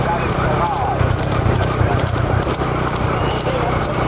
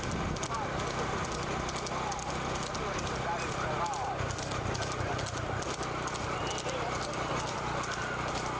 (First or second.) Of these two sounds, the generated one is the first